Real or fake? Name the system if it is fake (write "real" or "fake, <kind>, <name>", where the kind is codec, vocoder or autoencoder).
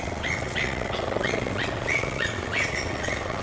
fake, vocoder, WaveNeXt